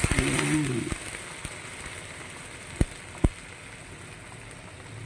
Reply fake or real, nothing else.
real